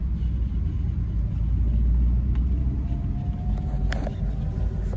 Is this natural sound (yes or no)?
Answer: yes